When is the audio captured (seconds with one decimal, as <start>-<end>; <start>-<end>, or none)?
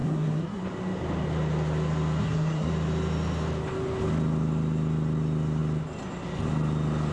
0.6-2.2; 2.7-7.1